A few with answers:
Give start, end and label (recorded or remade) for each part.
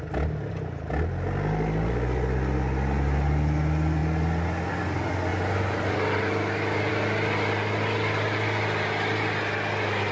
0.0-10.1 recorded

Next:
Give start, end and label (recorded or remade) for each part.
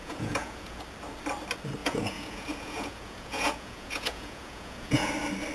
0.0-0.8 remade; 0.8-1.8 recorded; 1.8-5.1 remade; 5.1-5.5 recorded